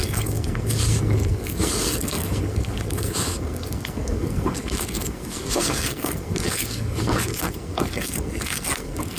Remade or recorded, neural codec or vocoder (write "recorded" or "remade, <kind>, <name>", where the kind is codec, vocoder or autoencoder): remade, codec, SNAC